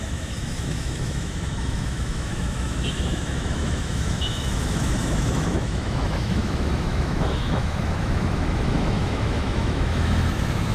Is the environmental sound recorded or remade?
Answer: remade